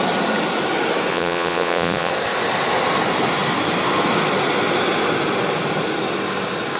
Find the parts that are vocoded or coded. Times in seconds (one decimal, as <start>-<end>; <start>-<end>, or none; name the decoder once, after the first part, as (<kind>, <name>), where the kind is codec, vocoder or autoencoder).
1.1-2.1 (vocoder, Vocos)